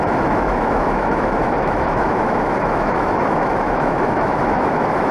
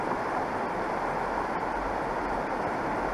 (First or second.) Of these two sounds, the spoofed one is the first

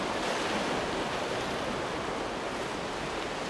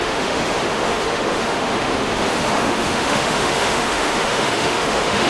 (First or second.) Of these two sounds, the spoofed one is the second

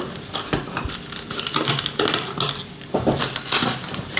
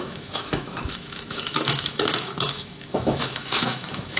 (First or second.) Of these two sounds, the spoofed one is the second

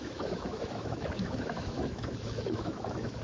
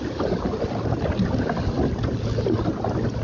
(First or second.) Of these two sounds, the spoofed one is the first